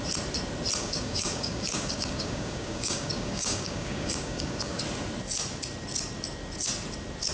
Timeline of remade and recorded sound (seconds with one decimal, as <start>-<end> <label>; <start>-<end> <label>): 0.0-0.8 recorded; 0.8-4.8 remade; 4.8-7.3 recorded